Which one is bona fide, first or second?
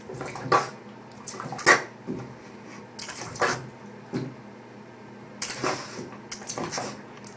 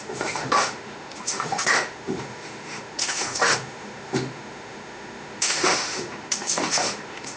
first